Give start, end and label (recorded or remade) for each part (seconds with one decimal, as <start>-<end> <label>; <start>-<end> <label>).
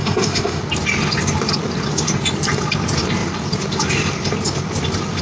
0.0-0.6 remade; 0.6-5.2 recorded